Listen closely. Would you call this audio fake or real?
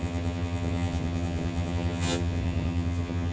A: fake